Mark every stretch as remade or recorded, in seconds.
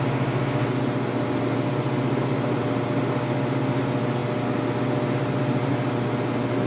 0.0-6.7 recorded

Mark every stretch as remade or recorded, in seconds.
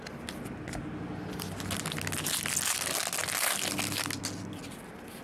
0.0-5.2 recorded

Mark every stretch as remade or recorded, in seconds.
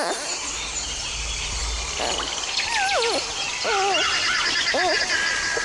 0.0-5.6 recorded